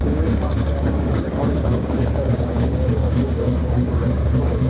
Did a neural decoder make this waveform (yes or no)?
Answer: yes